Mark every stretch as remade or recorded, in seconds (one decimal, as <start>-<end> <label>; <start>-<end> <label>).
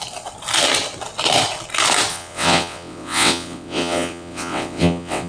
0.0-2.1 recorded; 2.1-5.3 remade